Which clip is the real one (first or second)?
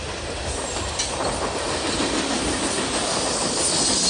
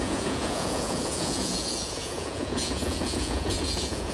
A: first